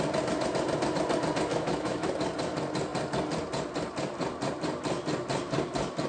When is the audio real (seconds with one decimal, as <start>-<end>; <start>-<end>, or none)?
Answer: 0.0-1.5; 2.1-6.1